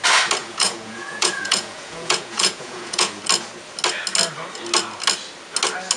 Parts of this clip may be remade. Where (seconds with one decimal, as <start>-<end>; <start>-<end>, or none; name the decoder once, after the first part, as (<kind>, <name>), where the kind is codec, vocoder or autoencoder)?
0.4-3.2 (vocoder, Vocos)